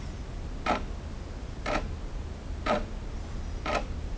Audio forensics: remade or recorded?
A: recorded